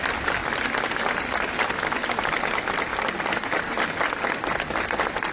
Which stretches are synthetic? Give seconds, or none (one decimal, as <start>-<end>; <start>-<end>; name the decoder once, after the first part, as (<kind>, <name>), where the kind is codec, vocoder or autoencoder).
2.9-4.0 (vocoder, BigVGAN v2)

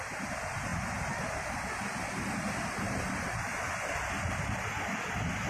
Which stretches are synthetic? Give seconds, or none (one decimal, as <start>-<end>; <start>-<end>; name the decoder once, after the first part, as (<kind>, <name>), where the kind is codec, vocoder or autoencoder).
none